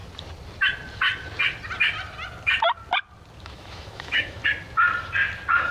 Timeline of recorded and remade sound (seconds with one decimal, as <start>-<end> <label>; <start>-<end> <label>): 0.0-3.4 recorded; 3.4-4.4 remade; 4.4-5.7 recorded